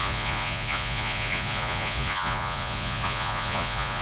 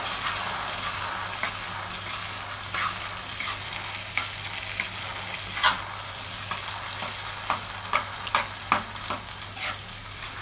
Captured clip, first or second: second